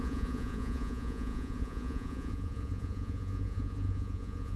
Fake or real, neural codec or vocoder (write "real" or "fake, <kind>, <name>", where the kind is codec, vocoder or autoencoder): fake, vocoder, Vocos